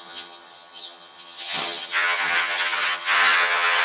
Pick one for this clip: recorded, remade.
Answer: remade